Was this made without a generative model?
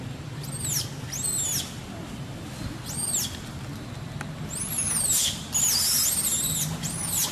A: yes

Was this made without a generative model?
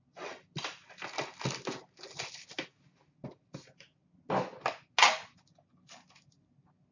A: yes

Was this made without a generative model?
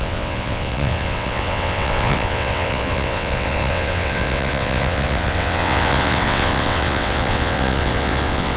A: no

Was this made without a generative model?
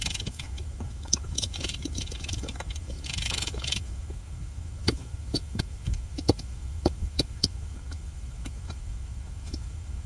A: no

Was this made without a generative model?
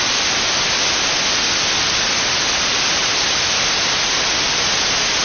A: yes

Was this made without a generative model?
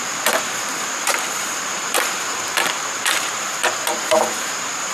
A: no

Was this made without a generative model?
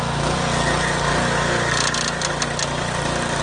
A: yes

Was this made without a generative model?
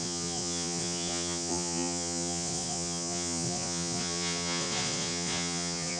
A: no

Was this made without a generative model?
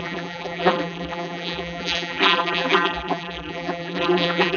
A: no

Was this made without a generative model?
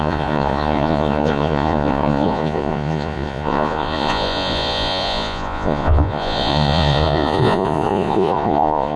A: no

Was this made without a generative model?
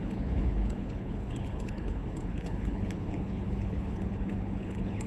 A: no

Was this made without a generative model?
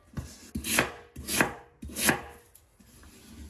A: yes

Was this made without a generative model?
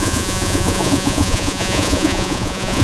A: no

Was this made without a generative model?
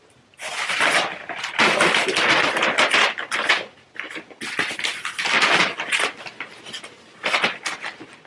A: yes